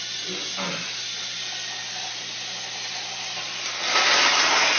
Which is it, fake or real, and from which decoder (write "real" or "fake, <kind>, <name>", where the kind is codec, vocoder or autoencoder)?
real